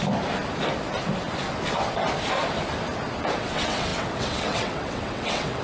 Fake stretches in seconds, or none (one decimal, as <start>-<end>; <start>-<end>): 3.4-5.6

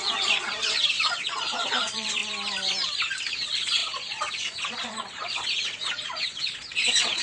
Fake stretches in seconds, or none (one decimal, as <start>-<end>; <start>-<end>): 0.0-2.2; 3.3-7.2

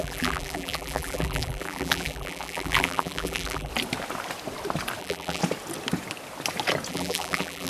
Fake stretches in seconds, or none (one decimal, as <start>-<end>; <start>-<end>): 0.0-3.7; 5.0-5.4; 6.9-7.7